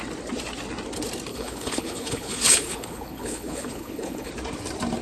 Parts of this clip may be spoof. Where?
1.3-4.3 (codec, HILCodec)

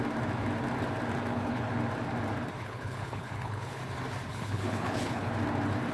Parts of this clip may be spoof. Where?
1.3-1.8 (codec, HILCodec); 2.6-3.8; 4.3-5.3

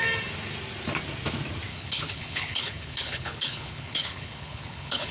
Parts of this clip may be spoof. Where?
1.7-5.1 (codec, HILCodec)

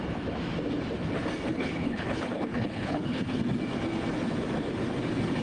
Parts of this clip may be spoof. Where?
1.5-3.4 (codec, HILCodec)

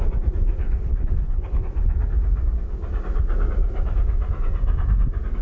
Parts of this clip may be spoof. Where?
0.6-1.6 (codec, HILCodec)

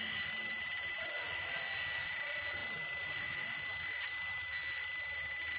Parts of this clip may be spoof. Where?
none

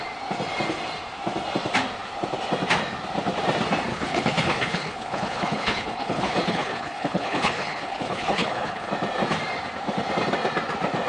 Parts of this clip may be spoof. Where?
3.9-8.9 (codec, HILCodec)